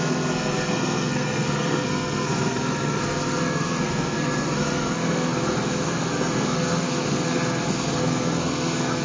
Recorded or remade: remade